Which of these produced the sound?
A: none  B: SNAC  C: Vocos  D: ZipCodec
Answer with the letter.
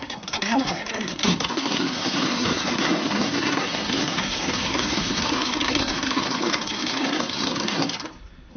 B